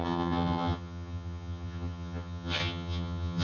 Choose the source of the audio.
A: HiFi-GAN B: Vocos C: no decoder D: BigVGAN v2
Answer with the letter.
A